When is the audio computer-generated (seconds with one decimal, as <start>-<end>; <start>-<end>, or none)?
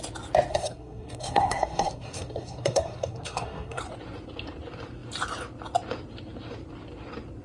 0.5-3.8